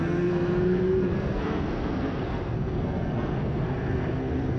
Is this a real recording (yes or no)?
no